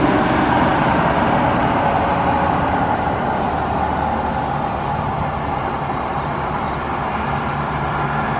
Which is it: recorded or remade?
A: recorded